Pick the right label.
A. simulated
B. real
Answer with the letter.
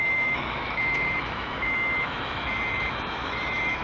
A